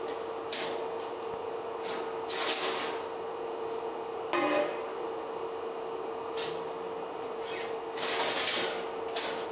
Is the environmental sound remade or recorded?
recorded